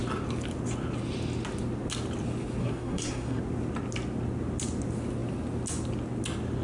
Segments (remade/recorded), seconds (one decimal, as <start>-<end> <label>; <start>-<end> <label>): 0.0-2.6 recorded; 2.6-3.4 remade; 3.4-6.6 recorded